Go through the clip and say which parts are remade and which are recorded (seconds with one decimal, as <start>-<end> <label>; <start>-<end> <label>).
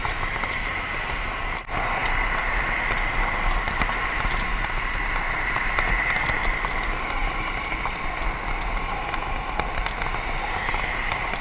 0.0-11.4 recorded